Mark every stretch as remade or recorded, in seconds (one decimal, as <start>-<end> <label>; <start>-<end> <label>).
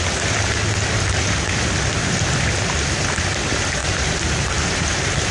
0.0-3.8 recorded; 3.8-5.3 remade